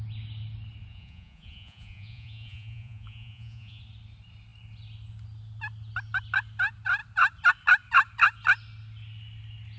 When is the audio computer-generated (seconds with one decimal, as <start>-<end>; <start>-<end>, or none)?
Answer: 0.9-3.8

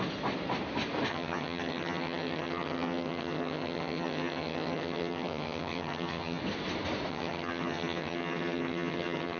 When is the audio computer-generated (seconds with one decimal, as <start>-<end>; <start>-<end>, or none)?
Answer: 1.1-6.4; 7.1-9.4

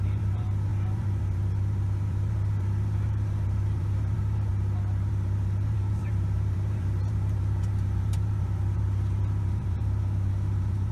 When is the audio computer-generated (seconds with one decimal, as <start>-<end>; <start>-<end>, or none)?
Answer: 0.0-4.5; 5.1-10.9